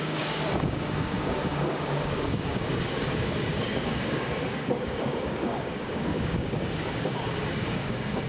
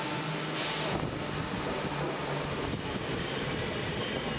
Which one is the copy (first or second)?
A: first